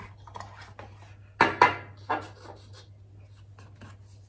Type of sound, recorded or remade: recorded